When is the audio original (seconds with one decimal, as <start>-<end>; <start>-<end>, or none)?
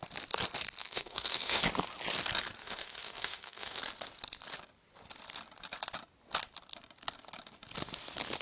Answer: 0.0-0.8; 1.6-2.6; 3.8-8.4